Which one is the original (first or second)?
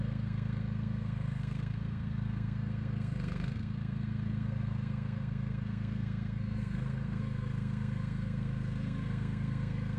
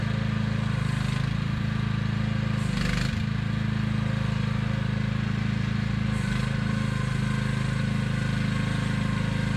second